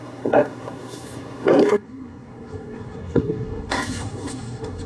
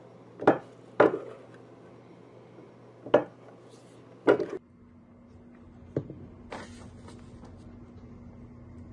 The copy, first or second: first